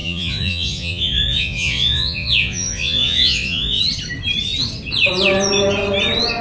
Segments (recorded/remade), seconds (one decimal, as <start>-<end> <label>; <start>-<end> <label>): 0.0-3.8 remade; 3.8-6.4 recorded